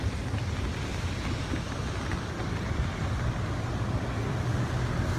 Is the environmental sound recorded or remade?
recorded